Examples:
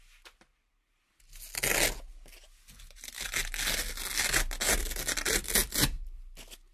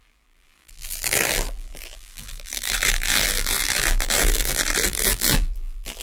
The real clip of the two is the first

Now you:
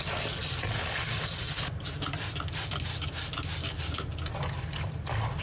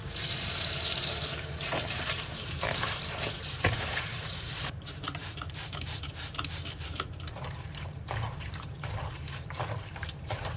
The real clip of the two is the first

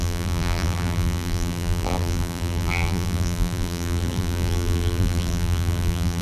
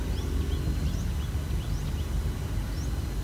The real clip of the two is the second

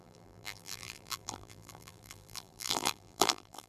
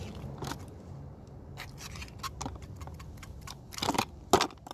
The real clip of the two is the second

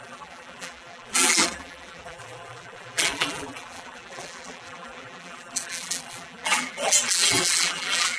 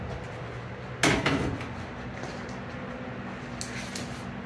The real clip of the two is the second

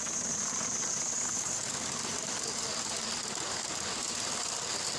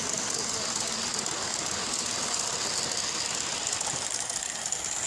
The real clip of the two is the second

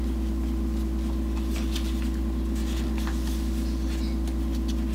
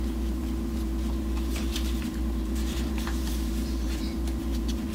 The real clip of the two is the first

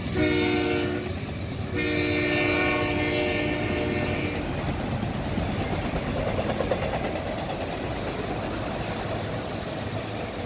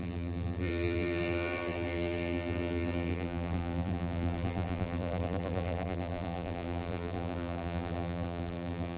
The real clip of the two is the first